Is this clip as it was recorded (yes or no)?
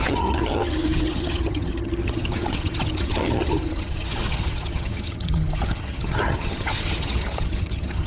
no